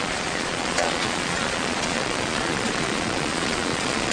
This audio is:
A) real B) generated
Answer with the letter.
B